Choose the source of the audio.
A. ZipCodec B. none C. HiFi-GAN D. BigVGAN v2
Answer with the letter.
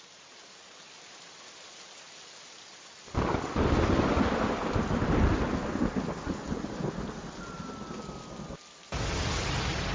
B